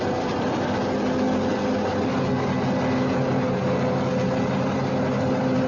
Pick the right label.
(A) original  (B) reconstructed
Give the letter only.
A